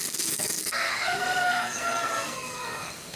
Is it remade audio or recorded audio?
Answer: remade